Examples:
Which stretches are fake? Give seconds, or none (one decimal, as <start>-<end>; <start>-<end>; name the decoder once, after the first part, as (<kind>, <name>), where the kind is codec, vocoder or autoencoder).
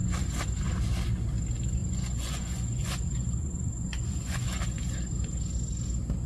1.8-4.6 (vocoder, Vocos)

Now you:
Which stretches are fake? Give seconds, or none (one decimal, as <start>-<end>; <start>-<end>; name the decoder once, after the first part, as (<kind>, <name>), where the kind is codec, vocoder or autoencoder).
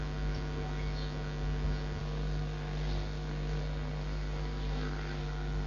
2.0-5.7 (codec, SNAC)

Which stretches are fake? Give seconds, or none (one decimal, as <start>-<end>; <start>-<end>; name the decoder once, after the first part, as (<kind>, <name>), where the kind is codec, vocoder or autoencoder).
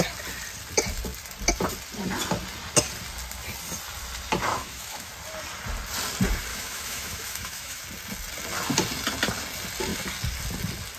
4.5-5.1 (autoencoder, DAC-VAE); 6.5-7.8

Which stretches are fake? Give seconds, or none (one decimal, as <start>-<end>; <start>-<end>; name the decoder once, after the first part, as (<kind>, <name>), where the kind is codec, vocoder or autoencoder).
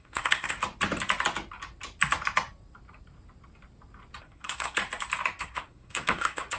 0.0-0.6 (codec, SNAC); 4.2-4.8; 5.4-6.6